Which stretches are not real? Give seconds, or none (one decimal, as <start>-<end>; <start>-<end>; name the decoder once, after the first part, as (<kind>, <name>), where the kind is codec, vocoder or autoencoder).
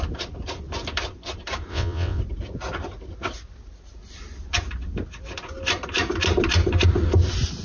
1.7-2.2 (vocoder, WaveNeXt)